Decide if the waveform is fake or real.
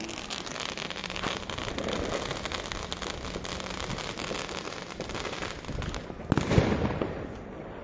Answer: real